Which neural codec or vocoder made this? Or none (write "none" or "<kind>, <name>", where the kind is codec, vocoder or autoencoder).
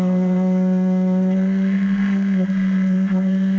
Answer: codec, SNAC